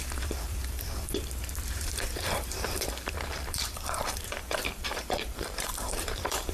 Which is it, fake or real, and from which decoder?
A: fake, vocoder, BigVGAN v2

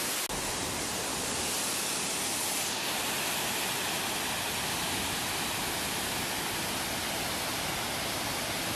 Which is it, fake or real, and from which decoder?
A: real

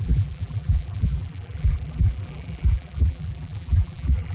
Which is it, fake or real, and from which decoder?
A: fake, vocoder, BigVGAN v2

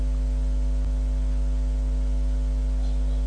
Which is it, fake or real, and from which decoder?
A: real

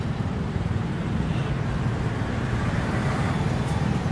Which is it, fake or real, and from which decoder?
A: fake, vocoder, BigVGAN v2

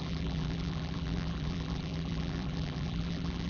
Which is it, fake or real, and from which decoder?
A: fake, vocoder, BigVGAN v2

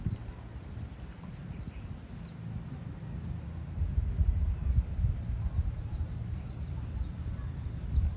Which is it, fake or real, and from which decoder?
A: real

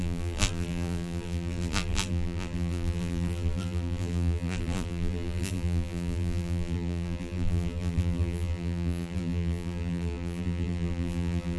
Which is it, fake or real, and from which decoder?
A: fake, vocoder, BigVGAN v2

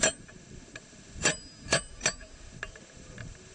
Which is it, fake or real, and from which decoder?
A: real